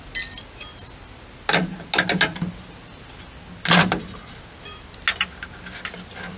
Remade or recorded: recorded